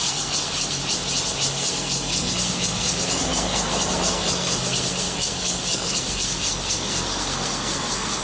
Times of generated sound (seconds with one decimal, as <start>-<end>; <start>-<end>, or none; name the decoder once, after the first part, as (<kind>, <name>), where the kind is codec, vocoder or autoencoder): 0.0-0.8 (codec, SNAC); 1.5-8.2